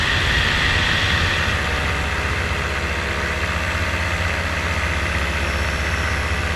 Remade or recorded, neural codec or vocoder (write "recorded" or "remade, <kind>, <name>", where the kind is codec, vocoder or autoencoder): recorded